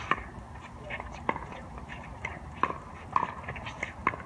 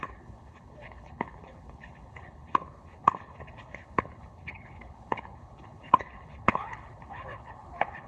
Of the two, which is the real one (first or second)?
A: first